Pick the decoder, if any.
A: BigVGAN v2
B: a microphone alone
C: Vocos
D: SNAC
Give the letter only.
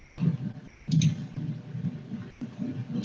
B